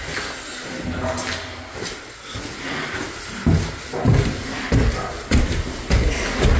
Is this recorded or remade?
recorded